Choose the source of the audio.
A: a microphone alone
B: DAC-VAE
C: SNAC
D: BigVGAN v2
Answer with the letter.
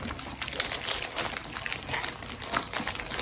A